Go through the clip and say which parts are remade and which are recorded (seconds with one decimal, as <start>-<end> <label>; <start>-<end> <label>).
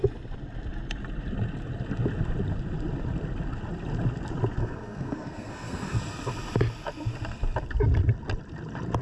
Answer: 0.0-4.6 recorded; 4.6-6.0 remade; 6.0-9.0 recorded